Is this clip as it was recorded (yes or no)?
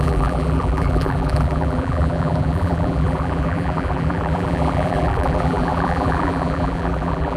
no